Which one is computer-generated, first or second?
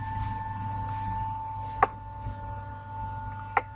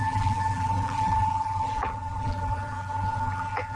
second